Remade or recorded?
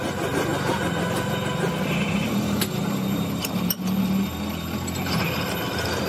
recorded